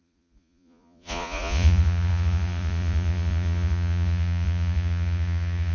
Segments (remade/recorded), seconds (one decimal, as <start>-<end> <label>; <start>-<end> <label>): 0.0-5.7 remade